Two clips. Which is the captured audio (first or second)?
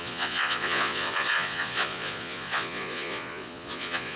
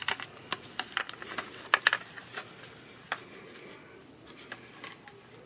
second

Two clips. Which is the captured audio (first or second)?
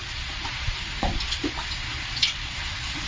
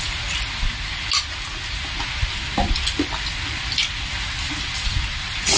second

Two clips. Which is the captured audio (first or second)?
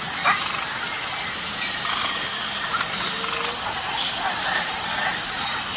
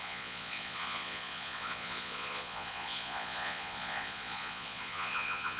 first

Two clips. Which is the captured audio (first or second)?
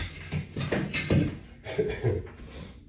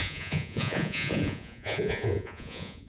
first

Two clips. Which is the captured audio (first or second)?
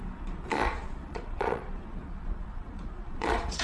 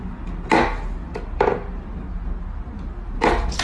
second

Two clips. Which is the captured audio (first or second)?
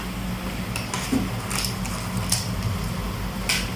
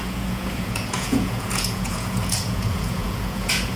first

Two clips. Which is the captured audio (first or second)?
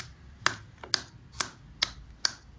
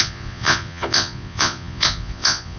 first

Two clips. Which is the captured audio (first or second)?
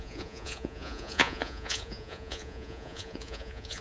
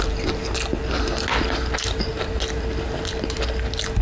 second